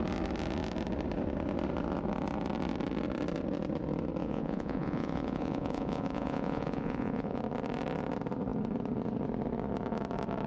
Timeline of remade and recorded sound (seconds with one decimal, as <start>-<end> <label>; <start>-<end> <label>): 0.0-4.2 recorded; 4.2-7.4 remade; 7.4-10.5 recorded